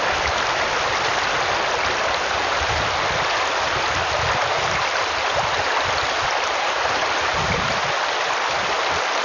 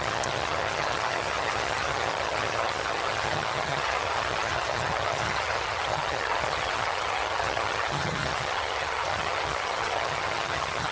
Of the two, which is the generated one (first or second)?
second